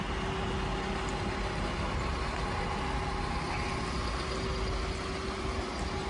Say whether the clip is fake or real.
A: real